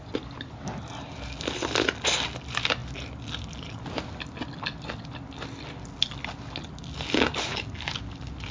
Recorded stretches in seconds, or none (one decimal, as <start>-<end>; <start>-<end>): 0.0-8.5